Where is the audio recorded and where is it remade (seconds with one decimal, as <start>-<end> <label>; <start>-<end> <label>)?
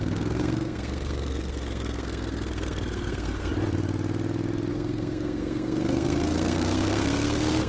0.0-3.5 remade; 3.5-4.7 recorded; 4.7-7.7 remade